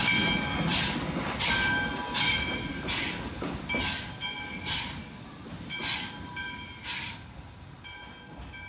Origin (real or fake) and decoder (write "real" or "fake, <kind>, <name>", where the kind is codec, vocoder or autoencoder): real